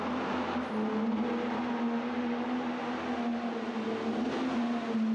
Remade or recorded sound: recorded